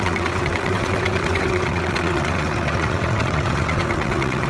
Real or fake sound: fake